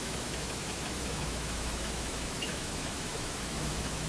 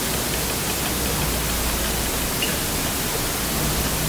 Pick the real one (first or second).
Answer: second